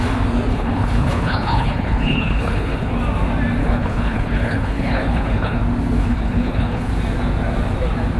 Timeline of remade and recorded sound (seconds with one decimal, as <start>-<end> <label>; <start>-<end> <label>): 0.0-0.5 recorded; 0.5-2.9 remade; 2.9-3.6 recorded; 3.6-5.6 remade; 5.6-6.0 recorded; 6.0-6.9 remade; 6.9-8.2 recorded